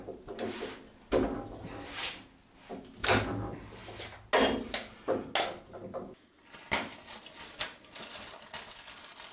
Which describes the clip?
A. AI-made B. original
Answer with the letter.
B